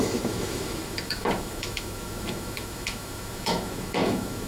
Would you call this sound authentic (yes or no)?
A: no